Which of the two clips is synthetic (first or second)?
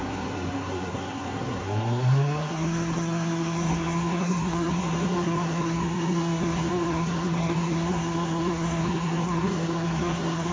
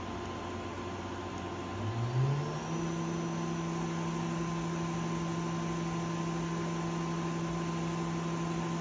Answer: first